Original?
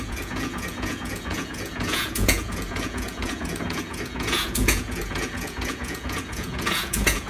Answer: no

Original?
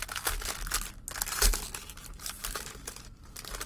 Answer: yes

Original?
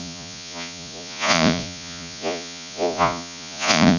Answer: no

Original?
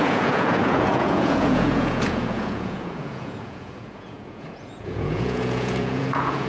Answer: no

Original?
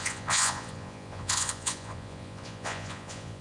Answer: no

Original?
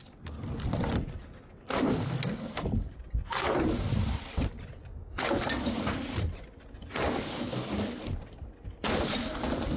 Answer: yes